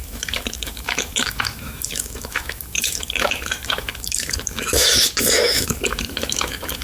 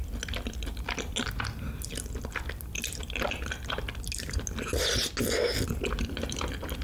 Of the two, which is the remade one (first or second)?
first